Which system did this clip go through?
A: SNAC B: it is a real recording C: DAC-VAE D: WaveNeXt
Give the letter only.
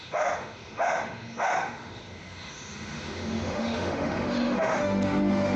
C